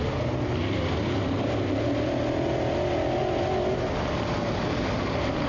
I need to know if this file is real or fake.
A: real